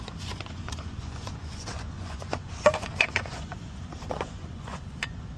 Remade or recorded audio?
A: remade